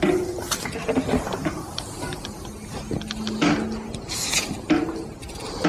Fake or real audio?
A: real